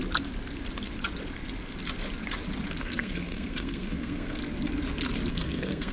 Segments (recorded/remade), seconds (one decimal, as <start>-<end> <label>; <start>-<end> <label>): 0.0-2.8 recorded; 2.8-4.4 remade; 4.4-5.3 recorded; 5.3-5.9 remade